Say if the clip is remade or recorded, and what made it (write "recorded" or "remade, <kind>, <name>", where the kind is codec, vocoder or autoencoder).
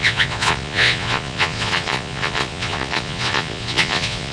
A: remade, vocoder, Vocos